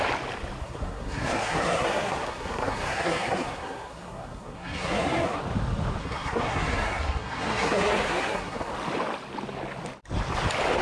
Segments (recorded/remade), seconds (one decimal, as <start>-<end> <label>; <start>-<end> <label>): 0.0-0.6 recorded; 0.6-5.4 remade; 5.4-6.0 recorded; 6.0-8.7 remade; 8.7-10.8 recorded